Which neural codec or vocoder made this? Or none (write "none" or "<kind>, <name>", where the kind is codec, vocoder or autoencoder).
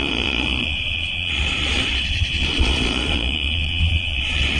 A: vocoder, Vocos